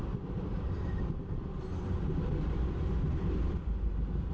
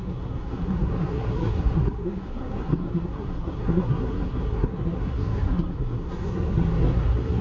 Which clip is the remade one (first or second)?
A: second